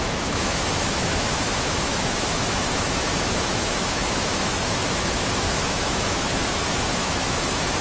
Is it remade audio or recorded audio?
remade